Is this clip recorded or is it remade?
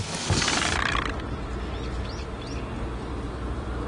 recorded